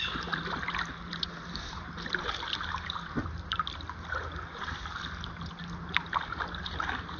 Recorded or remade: recorded